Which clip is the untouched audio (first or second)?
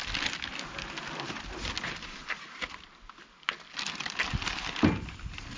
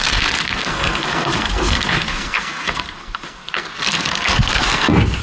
first